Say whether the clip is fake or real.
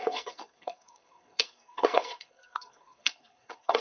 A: fake